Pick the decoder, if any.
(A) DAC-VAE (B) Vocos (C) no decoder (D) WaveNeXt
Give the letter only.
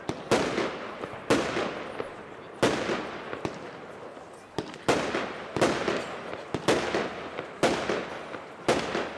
C